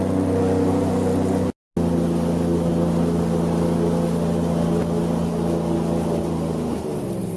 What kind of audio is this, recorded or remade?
recorded